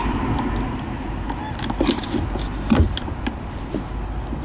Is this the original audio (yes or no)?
yes